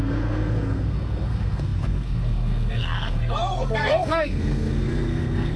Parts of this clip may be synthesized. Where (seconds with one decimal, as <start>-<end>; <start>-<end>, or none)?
0.0-5.6